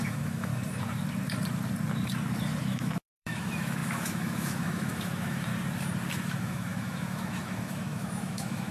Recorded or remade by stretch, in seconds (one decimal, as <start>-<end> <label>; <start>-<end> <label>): 0.0-0.5 remade; 0.5-2.6 recorded; 2.6-5.5 remade; 5.5-6.2 recorded; 6.2-8.7 remade